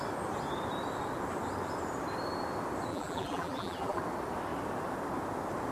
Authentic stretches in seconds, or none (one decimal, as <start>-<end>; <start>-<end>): 0.0-2.9; 4.0-5.7